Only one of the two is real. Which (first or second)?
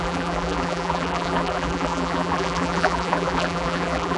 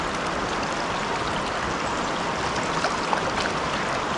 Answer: second